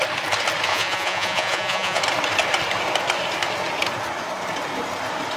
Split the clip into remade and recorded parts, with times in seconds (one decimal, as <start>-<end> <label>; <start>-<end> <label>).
0.0-0.7 recorded; 0.7-2.0 remade; 2.0-5.4 recorded